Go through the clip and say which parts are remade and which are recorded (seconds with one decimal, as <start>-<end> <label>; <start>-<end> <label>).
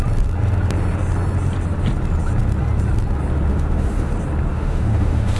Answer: 0.0-3.5 recorded; 3.5-4.1 remade; 4.1-4.5 recorded; 4.5-5.4 remade